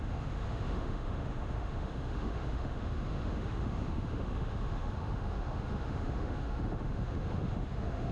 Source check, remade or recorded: remade